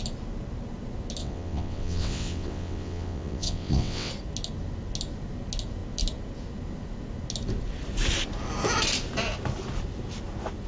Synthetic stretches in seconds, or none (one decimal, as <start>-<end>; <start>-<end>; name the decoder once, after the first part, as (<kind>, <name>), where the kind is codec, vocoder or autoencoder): 1.2-4.1 (vocoder, WaveNeXt)